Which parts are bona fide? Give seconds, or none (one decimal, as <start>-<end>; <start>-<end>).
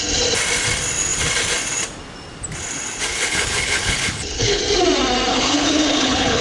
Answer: 0.0-3.1; 4.6-5.3